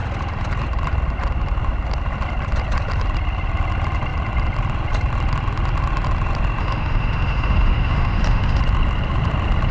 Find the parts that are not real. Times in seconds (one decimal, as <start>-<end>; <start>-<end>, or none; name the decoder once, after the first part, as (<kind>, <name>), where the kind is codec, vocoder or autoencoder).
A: 6.6-8.6 (autoencoder, DAC-VAE)